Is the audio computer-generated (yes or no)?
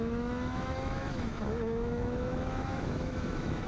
yes